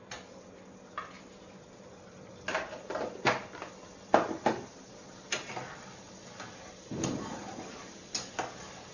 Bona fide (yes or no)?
yes